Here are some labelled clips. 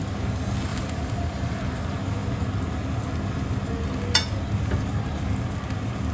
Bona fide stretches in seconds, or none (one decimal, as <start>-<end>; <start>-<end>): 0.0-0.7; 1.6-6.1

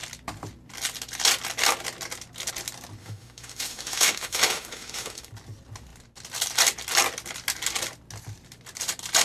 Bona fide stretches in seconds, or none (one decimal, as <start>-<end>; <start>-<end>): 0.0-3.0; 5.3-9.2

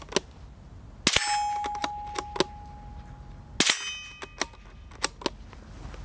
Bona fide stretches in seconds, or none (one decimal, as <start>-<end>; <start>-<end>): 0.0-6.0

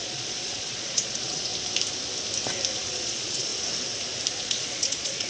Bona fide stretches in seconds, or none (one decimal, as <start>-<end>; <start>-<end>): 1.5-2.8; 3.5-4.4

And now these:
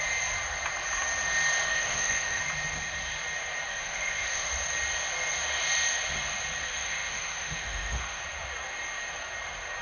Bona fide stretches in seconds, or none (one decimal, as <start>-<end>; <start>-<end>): 0.0-1.7; 2.4-3.7; 4.5-6.8; 8.2-9.8

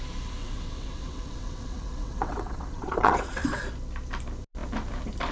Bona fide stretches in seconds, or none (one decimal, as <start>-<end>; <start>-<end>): 0.0-0.4; 3.6-5.3

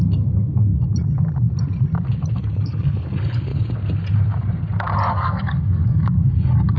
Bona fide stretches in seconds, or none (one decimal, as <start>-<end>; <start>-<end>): 0.7-2.4; 3.5-5.1